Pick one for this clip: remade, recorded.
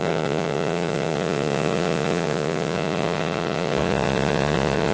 remade